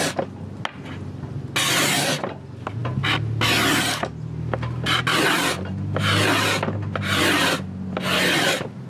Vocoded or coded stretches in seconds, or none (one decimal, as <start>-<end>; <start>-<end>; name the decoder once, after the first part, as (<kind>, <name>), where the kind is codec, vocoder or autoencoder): none